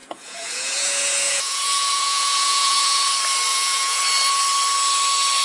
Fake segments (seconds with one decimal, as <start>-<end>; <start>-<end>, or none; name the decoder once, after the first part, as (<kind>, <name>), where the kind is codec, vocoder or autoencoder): 0.0-3.1 (vocoder, Vocos); 3.5-4.0

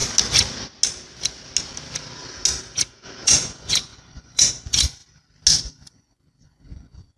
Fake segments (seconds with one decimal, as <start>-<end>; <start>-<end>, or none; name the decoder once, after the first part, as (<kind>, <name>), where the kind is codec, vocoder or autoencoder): 2.9-5.0 (vocoder, Vocos); 5.6-7.2

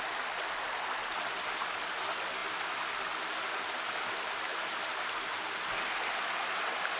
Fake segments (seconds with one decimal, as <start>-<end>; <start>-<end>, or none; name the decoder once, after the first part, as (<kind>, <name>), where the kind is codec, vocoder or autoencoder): none

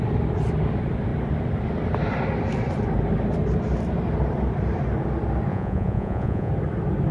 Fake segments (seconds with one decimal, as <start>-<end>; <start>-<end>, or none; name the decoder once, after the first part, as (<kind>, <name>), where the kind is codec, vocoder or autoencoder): 5.5-6.5 (vocoder, Vocos)

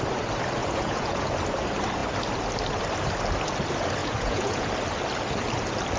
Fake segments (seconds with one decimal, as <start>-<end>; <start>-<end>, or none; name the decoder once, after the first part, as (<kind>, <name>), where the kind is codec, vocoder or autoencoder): 0.6-1.3 (vocoder, Vocos); 4.0-4.7

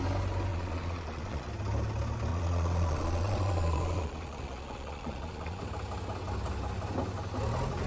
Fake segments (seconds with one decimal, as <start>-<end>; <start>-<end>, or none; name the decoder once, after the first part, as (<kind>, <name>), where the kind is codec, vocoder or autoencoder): 0.5-1.5 (vocoder, Vocos); 2.3-5.6